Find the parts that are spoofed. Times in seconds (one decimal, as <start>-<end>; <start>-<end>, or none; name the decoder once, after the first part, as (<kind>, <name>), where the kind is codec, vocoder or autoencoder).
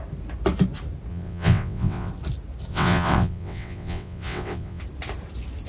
1.1-2.1 (vocoder, WaveNeXt); 2.7-4.8